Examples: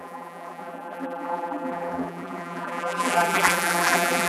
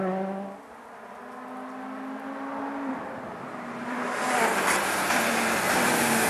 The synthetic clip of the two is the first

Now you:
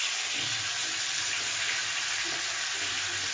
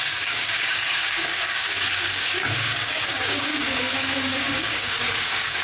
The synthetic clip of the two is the second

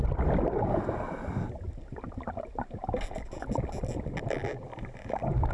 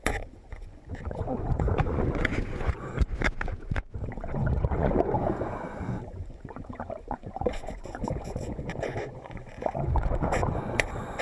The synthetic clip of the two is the second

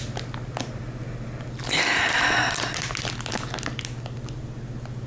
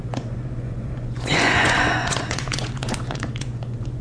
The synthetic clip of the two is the second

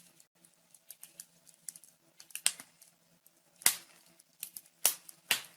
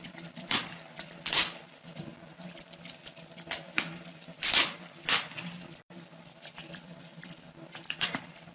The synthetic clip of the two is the second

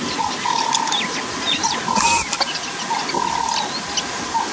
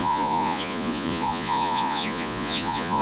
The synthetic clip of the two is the second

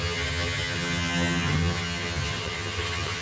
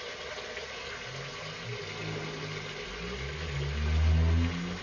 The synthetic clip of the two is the first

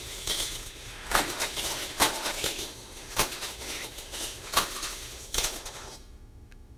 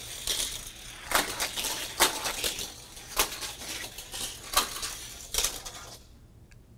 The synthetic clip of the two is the first